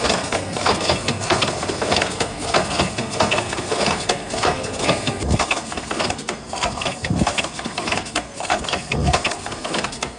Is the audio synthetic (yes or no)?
yes